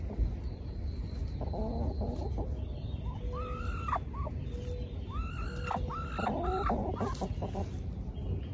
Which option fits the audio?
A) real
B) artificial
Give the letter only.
A